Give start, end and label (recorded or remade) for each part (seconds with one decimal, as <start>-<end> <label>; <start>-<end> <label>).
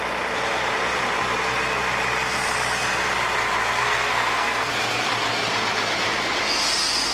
0.0-3.6 recorded; 3.6-4.7 remade; 4.7-7.1 recorded